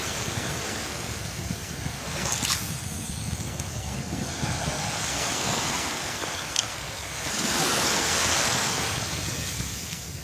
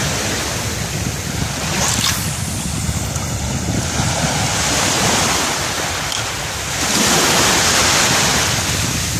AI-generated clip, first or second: first